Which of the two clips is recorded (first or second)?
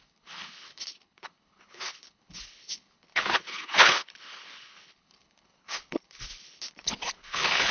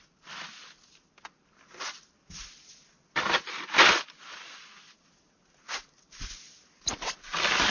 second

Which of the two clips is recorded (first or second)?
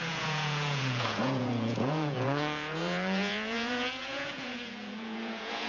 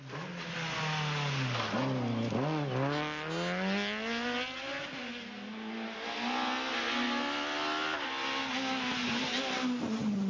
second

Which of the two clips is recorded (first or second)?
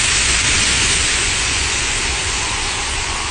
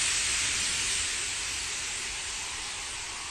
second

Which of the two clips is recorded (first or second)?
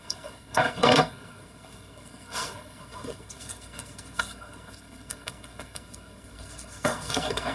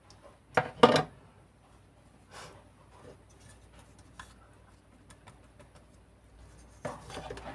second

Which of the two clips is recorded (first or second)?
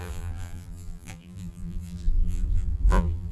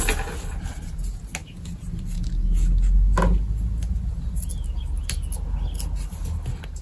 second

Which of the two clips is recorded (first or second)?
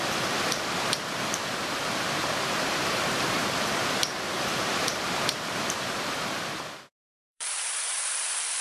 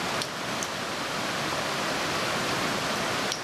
second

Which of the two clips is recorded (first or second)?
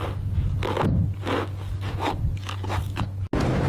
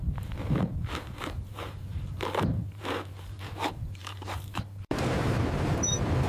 first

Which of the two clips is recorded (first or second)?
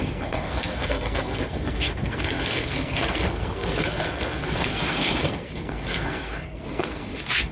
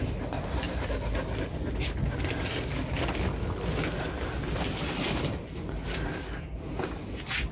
second